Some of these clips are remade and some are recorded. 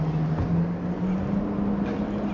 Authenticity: recorded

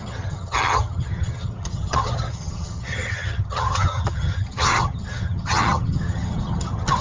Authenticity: remade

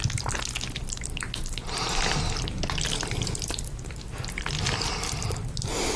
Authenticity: recorded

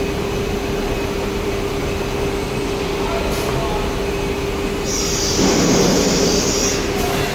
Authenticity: recorded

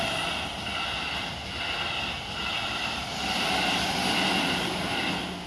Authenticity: recorded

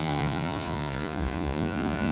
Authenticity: remade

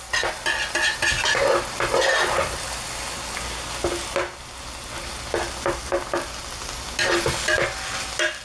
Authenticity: recorded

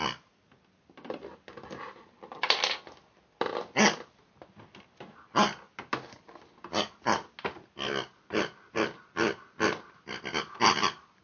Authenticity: recorded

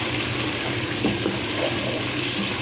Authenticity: recorded